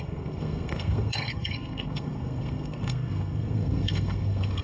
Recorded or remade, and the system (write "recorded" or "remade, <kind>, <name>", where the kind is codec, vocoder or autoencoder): remade, codec, SNAC